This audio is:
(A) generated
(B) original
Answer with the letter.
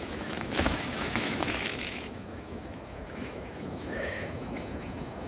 A